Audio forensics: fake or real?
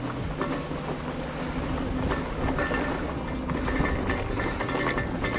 real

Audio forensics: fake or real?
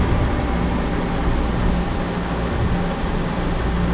real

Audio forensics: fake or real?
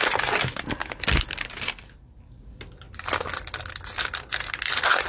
real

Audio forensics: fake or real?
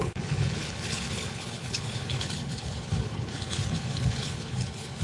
fake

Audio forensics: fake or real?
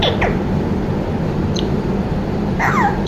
fake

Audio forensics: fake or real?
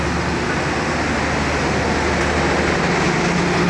real